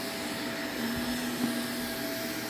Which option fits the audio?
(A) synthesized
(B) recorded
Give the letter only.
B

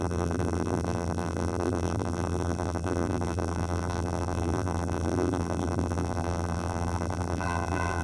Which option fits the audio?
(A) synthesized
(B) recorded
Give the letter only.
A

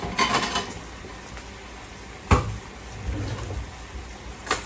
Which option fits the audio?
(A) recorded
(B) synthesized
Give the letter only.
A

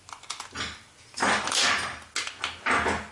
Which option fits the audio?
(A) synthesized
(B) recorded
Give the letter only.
B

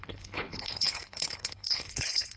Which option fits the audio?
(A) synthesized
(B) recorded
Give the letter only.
A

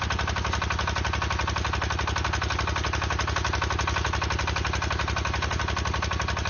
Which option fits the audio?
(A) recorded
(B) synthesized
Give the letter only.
A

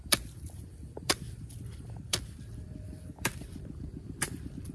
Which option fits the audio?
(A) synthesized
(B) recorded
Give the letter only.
A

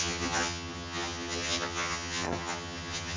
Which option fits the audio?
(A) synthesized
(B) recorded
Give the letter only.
A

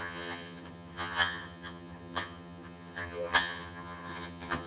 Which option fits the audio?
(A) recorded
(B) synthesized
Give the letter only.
B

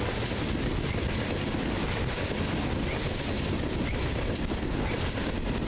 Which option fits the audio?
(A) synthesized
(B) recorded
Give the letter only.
B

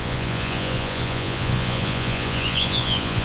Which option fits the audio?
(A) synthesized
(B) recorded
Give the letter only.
A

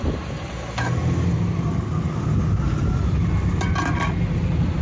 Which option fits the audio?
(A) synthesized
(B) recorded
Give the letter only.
B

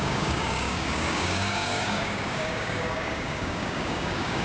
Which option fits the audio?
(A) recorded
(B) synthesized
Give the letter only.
B